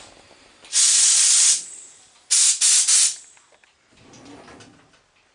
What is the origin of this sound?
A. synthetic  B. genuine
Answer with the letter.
B